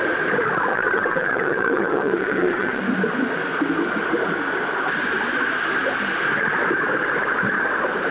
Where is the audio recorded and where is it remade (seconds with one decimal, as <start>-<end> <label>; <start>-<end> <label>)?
0.0-0.7 recorded; 0.7-2.8 remade; 2.8-8.1 recorded